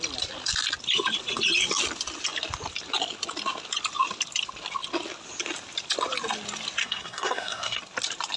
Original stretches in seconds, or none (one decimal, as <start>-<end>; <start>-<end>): 0.0-6.8; 7.8-8.4